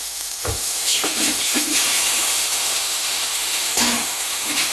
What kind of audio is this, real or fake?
fake